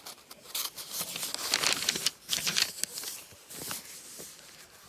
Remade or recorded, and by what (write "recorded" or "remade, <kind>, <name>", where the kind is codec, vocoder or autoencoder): recorded